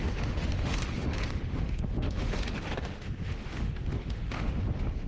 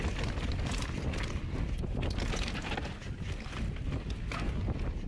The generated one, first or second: first